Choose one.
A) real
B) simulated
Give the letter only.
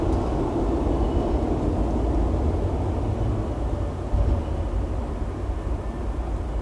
A